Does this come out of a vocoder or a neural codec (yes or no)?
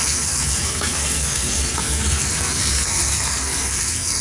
yes